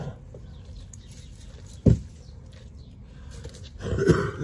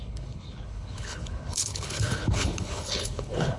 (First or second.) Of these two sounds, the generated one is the second